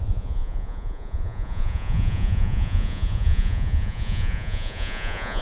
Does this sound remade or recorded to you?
remade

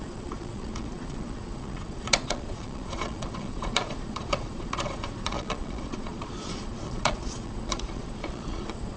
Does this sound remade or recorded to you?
remade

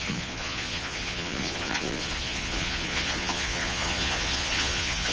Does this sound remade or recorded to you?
remade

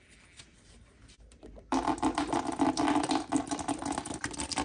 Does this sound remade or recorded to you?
recorded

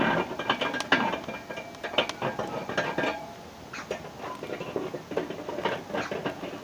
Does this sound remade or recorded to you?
recorded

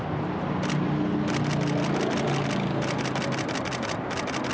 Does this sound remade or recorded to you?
recorded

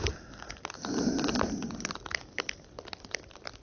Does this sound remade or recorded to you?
recorded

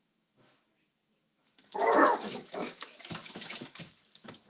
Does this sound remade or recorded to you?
remade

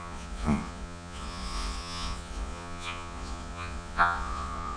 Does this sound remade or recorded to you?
remade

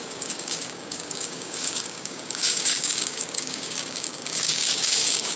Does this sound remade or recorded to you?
remade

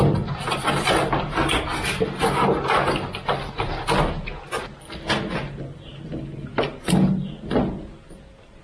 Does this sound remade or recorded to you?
recorded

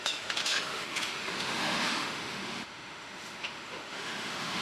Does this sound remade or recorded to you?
remade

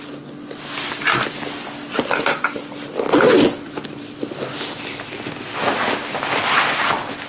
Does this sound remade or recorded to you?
recorded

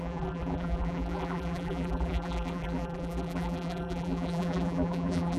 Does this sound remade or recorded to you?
remade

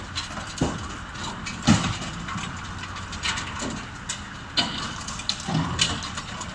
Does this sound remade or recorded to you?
recorded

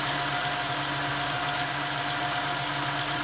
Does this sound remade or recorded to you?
recorded